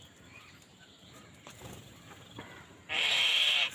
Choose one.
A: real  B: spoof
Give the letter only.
B